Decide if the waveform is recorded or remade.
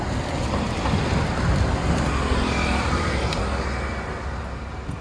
recorded